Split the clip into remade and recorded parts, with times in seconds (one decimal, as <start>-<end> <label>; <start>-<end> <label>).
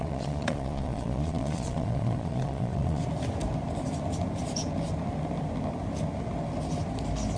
0.0-3.0 remade; 3.0-7.4 recorded